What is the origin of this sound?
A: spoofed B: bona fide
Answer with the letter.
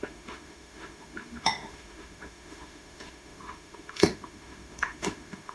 A